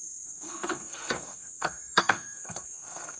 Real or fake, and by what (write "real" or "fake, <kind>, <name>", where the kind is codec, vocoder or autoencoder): fake, codec, SNAC